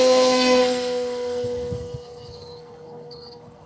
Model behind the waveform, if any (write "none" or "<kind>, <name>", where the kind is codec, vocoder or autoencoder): codec, SNAC